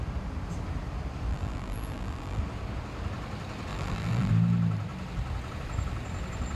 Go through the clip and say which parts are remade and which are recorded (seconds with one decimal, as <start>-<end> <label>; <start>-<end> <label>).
0.0-1.3 recorded; 1.3-2.4 remade; 2.4-3.7 recorded; 3.7-4.3 remade; 4.3-6.6 recorded